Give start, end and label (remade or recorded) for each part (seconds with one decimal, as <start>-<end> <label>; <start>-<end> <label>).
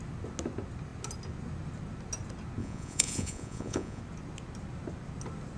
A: 0.0-2.6 recorded; 2.6-4.0 remade; 4.0-5.6 recorded